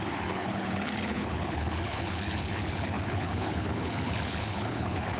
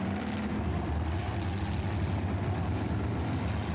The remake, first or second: first